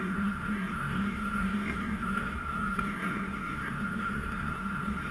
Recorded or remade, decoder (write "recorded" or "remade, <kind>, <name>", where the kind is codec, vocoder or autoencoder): remade, codec, SNAC